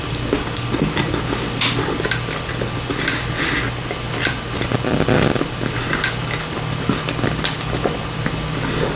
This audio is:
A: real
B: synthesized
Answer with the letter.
A